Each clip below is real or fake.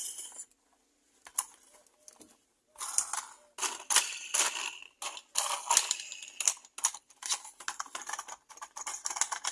real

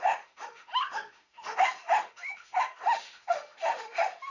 fake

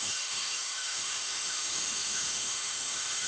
fake